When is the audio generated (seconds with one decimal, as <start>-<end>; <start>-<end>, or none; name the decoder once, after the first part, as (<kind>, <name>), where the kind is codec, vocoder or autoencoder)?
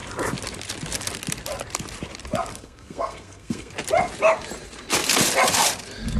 2.5-3.7 (codec, SNAC)